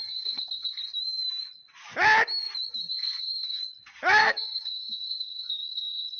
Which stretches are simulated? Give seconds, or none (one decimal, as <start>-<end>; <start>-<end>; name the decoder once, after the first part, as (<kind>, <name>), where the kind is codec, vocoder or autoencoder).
0.0-0.8 (codec, SNAC); 2.9-3.6; 4.2-6.2